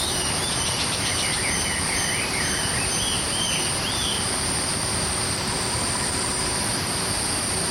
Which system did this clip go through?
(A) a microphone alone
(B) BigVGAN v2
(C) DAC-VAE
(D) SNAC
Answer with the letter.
B